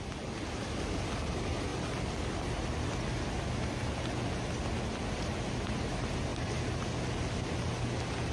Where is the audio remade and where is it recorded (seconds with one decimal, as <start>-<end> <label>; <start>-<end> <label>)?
0.0-8.3 recorded